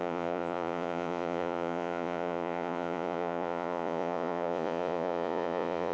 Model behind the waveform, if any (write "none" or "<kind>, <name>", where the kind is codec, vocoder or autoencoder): vocoder, Vocos